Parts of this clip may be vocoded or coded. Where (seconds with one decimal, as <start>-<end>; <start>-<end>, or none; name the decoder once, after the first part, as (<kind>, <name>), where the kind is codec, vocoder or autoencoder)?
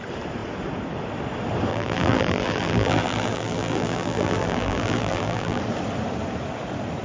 1.7-5.6 (vocoder, BigVGAN v2)